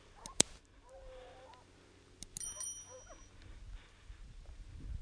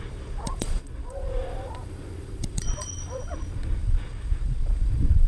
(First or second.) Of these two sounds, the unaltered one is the first